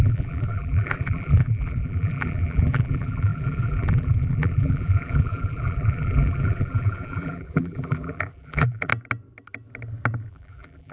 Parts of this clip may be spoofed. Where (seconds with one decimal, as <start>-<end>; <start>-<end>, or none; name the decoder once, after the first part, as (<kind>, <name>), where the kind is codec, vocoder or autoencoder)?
0.0-8.9 (vocoder, BigVGAN v2); 10.3-10.9